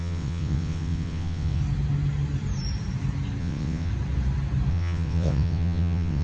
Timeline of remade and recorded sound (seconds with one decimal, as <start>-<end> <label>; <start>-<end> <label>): 0.0-1.6 remade; 1.6-3.4 recorded; 3.4-3.9 remade; 3.9-4.7 recorded; 4.7-6.2 remade